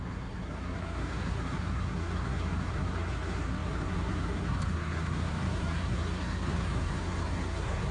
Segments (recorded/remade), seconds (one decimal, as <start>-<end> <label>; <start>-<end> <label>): 0.0-7.9 remade